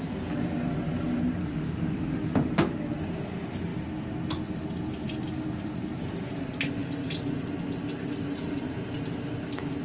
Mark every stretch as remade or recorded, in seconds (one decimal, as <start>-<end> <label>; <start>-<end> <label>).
0.0-1.4 recorded; 1.4-2.5 remade; 2.5-9.8 recorded